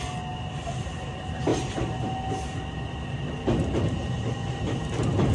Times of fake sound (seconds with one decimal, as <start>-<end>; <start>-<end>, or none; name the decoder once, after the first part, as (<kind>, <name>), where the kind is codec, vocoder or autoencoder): 1.5-4.6 (vocoder, BigVGAN v2)